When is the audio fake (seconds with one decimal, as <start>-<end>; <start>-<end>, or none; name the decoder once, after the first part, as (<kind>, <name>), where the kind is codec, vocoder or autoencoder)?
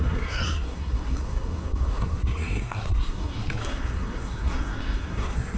0.0-5.6 (codec, SNAC)